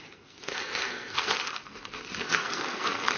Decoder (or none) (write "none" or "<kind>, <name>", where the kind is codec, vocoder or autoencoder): codec, SNAC